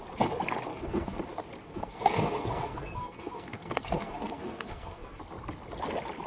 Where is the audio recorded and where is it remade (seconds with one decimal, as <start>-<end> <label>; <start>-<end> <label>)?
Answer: 0.0-0.7 recorded; 0.7-1.2 remade; 1.2-1.6 recorded; 1.6-5.2 remade; 5.2-6.3 recorded